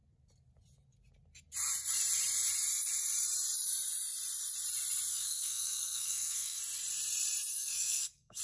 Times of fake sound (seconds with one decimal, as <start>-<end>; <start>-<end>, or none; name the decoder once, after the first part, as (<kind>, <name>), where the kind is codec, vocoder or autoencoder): 5.1-6.6 (codec, SNAC); 7.5-8.4